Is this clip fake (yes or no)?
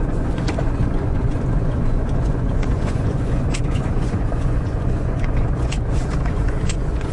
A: yes